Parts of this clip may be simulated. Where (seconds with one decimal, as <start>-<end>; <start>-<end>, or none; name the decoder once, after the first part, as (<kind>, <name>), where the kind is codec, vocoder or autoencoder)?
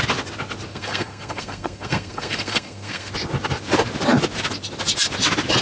0.7-3.1 (codec, SNAC)